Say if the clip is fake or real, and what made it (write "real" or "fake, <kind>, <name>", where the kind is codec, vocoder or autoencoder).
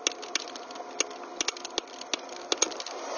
real